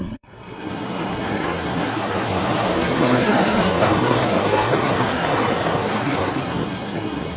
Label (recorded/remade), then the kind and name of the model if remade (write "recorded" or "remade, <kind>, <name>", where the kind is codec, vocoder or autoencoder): remade, codec, SNAC